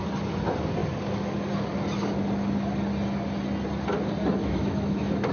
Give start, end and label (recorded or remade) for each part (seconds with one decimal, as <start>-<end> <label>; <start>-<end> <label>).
0.0-4.4 recorded; 4.4-5.3 remade